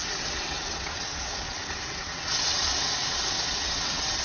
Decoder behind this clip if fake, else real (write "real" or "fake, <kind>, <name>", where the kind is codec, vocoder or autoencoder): fake, vocoder, WaveNeXt